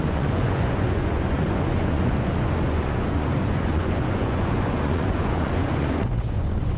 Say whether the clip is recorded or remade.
remade